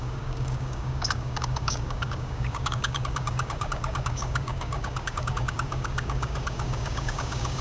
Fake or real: fake